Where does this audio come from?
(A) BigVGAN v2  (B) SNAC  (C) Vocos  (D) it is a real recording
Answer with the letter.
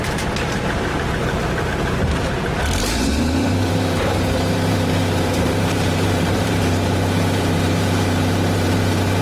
A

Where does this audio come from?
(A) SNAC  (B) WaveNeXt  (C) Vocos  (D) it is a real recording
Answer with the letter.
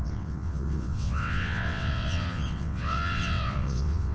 B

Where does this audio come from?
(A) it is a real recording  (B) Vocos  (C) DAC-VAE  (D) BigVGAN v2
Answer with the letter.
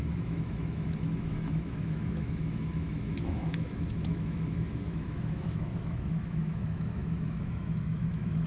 C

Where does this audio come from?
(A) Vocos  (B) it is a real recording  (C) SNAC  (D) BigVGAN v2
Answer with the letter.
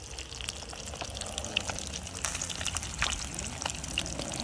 B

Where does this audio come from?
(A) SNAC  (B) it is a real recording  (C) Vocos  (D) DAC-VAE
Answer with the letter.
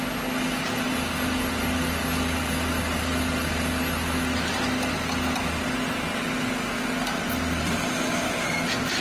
B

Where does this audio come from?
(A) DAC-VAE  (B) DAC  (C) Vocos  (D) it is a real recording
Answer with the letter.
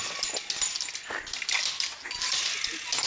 D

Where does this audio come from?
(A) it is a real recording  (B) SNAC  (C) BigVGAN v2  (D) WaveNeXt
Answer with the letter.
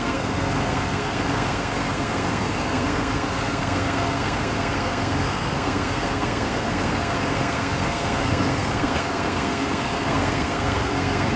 B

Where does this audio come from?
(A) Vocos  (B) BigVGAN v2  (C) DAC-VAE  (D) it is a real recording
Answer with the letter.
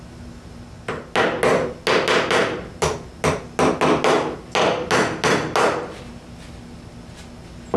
D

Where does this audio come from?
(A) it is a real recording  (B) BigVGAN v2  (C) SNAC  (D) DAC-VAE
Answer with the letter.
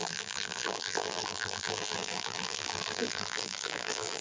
B